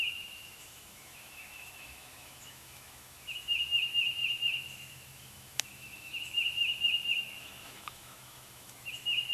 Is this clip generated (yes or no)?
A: yes